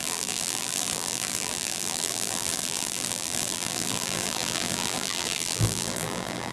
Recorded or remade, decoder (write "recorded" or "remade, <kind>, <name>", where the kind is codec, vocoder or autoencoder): remade, vocoder, BigVGAN v2